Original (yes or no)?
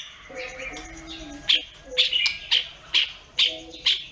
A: yes